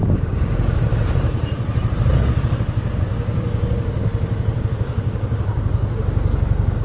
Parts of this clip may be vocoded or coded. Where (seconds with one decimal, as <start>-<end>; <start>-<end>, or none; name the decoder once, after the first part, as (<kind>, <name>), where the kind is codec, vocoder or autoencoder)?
0.0-0.9 (codec, DAC); 2.2-4.1; 4.7-6.8